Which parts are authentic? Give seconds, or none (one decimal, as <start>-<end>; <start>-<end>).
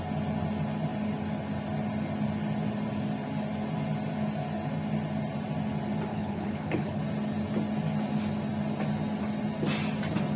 0.0-6.1; 7.0-10.4